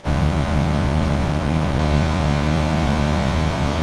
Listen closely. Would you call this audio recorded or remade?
remade